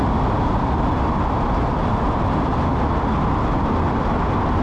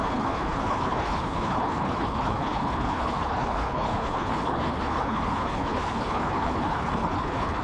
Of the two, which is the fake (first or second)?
second